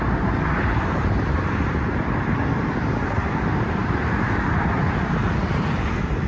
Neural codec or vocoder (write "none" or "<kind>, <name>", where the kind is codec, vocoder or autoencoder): none